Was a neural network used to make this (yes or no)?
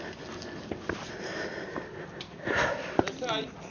no